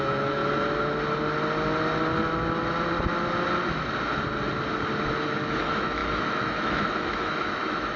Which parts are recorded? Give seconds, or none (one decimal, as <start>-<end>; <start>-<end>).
0.4-5.2